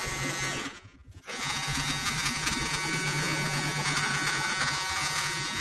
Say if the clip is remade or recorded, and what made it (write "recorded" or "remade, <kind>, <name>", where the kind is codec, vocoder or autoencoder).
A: remade, vocoder, Vocos